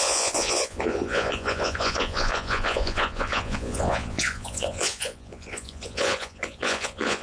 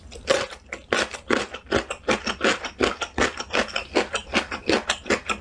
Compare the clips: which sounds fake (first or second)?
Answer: first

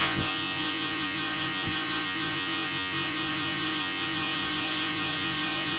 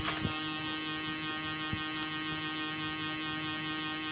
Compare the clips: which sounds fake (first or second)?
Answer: first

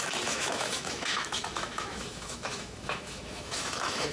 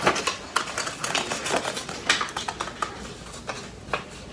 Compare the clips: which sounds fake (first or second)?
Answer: first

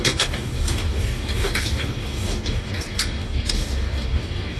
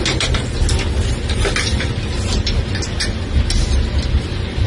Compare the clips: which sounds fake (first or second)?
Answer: first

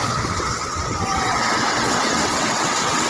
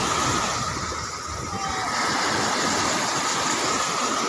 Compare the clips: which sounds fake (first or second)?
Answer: first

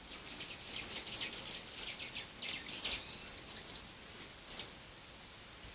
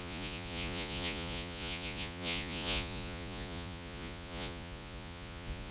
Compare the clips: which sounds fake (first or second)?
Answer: second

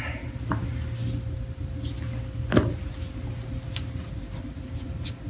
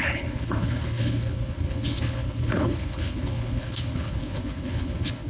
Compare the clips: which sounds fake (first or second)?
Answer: second